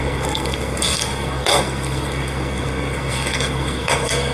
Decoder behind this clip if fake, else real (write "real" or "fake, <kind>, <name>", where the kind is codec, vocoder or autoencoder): fake, codec, SNAC